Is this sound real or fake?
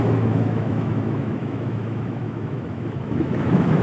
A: fake